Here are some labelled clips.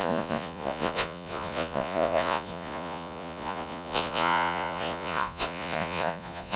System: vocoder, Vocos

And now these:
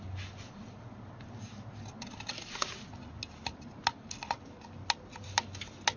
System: none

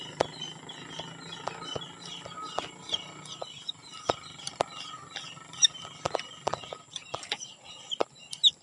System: none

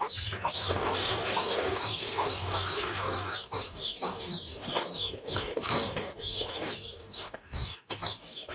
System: codec, DAC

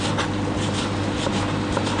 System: none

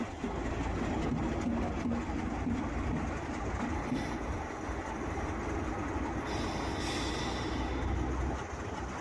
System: none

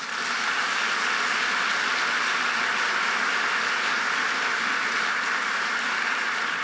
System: none